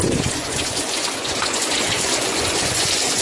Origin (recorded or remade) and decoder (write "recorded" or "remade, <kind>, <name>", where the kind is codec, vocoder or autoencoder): remade, vocoder, Vocos